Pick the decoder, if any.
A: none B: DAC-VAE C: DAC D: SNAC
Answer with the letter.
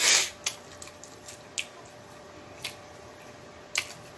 A